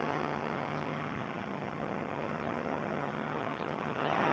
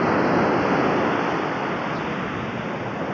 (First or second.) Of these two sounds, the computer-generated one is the first